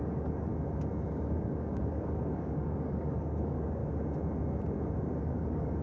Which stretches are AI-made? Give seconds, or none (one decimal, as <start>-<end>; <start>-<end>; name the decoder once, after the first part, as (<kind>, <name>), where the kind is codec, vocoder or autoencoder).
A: 0.0-0.5 (codec, DAC); 1.1-3.8; 5.2-5.8